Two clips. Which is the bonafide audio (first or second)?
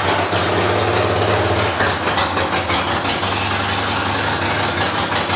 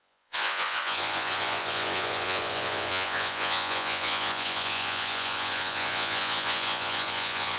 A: first